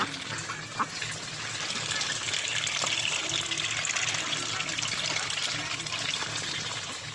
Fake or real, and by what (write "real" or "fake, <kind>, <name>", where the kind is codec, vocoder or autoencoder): real